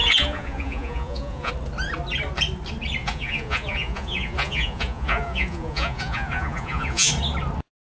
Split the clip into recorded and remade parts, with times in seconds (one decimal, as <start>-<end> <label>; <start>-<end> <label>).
0.0-1.5 remade; 1.5-3.0 recorded; 3.0-7.1 remade; 7.1-7.8 recorded